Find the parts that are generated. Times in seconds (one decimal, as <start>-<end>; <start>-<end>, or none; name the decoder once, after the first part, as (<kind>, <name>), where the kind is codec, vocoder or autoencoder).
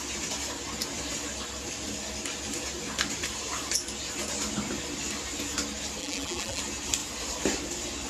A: 6.0-6.6 (vocoder, BigVGAN v2)